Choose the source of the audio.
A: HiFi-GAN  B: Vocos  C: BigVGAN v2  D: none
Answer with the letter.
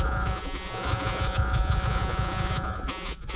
B